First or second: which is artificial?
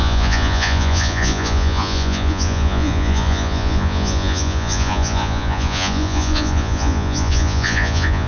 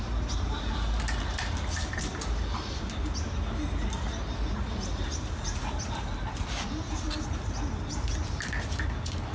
first